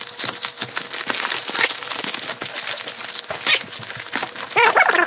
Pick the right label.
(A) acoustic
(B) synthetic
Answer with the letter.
A